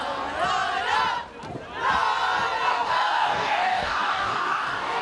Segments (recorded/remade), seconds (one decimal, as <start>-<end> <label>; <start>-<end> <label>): 0.0-2.7 recorded; 2.7-5.0 remade